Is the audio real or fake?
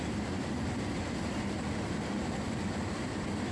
fake